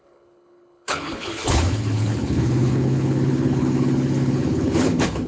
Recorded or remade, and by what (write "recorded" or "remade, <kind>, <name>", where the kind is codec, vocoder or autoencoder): remade, codec, HILCodec